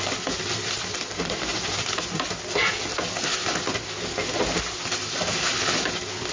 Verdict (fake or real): real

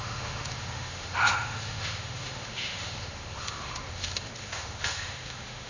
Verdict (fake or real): fake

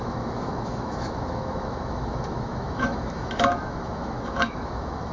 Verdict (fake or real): fake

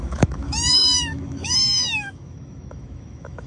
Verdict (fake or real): fake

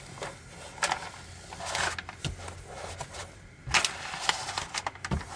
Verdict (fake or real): real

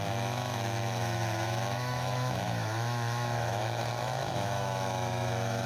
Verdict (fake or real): fake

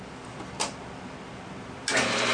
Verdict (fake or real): real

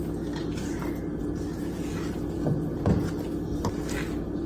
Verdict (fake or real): real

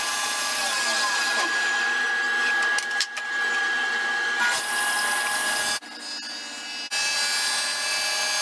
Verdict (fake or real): real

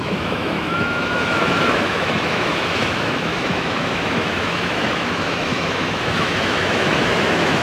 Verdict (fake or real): fake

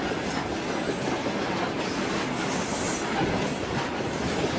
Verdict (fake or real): real